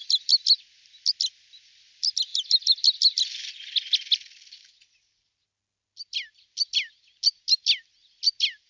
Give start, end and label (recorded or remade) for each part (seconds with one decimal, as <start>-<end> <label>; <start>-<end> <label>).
0.0-8.7 recorded